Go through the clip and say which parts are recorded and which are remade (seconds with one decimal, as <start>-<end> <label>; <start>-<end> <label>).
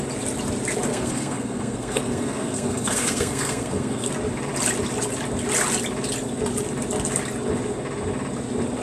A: 0.0-0.9 recorded; 0.9-4.1 remade; 4.1-8.8 recorded